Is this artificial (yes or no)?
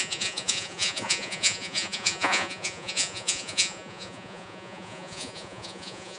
yes